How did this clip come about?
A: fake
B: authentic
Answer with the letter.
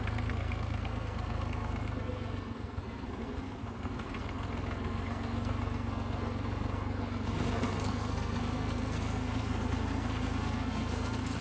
A